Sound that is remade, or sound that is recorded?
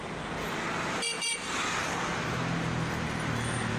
recorded